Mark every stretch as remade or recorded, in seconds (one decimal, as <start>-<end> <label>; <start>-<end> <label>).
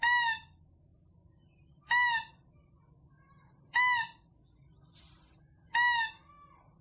0.0-6.8 recorded